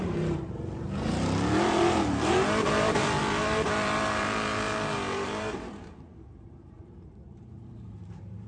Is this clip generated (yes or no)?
yes